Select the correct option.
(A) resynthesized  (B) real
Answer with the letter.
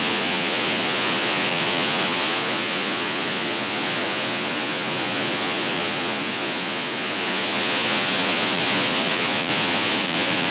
A